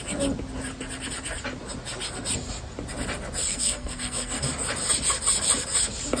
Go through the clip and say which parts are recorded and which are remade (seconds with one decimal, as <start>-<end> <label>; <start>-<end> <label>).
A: 0.0-3.5 recorded; 3.5-4.5 remade; 4.5-6.2 recorded